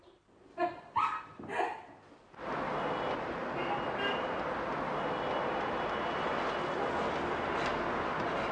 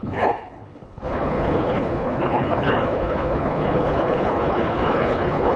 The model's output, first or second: second